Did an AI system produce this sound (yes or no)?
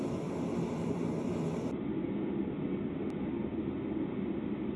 no